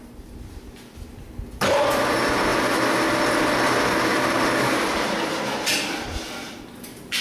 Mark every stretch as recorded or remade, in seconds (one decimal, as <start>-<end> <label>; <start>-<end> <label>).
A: 0.0-4.1 recorded; 4.1-5.1 remade; 5.1-7.2 recorded